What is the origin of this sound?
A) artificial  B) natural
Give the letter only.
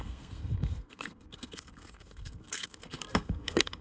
A